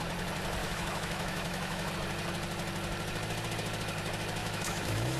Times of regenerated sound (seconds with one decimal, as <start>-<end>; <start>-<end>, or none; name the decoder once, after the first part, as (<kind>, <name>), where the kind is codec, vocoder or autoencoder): 0.6-1.9 (autoencoder, DAC-VAE); 4.4-5.2